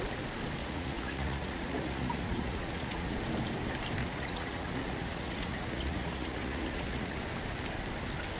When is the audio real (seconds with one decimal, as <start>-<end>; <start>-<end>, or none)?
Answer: 0.0-0.6; 3.2-4.0; 7.2-8.4